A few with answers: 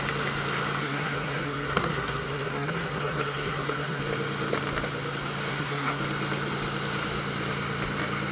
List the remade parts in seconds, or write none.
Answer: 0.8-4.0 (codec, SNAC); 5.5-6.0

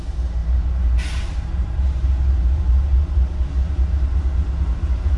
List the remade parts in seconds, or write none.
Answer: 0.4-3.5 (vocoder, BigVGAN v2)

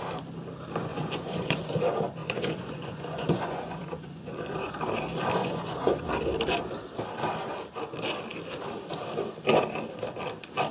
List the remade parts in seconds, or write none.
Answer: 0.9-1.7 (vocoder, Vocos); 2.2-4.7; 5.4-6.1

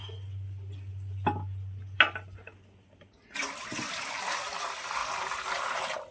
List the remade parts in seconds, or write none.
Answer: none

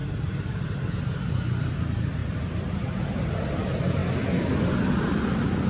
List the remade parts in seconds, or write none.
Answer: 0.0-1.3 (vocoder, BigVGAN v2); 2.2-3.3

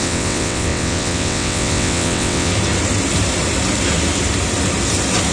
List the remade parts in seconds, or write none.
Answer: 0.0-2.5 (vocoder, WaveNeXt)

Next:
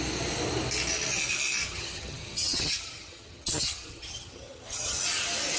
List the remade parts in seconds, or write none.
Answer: 1.6-5.0 (vocoder, HiFi-GAN)